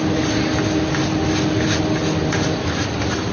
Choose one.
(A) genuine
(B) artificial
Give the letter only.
A